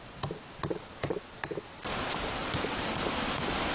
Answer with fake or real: real